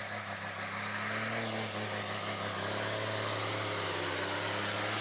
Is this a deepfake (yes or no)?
no